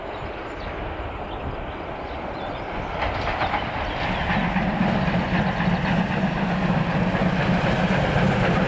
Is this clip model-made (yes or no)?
no